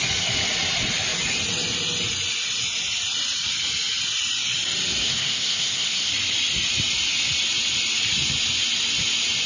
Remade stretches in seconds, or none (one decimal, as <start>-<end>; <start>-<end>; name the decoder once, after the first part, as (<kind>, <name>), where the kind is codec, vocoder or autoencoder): 5.0-6.1 (codec, SNAC)